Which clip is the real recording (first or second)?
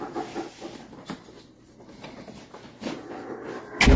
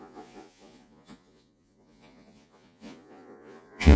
first